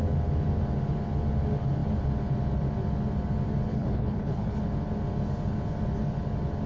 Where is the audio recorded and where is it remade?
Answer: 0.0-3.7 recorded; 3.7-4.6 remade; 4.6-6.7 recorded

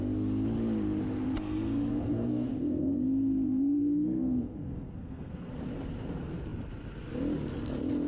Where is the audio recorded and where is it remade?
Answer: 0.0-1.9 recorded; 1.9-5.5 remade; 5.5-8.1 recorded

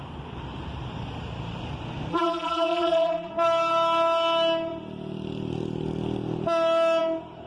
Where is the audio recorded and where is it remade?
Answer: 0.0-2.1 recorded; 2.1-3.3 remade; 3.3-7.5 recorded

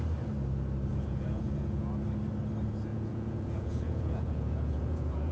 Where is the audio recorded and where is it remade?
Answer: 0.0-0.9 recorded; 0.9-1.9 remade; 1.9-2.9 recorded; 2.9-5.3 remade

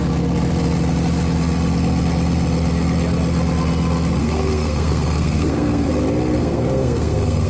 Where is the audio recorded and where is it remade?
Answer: 0.0-4.2 recorded; 4.2-5.9 remade; 5.9-6.4 recorded; 6.4-7.5 remade